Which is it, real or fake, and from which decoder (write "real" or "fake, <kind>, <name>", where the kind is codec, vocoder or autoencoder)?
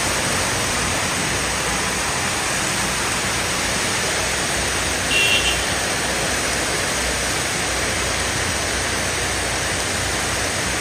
real